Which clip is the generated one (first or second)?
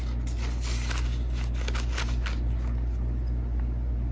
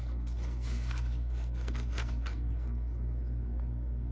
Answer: second